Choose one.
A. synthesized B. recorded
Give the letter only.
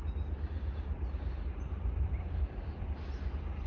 A